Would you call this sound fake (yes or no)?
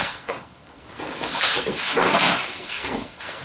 yes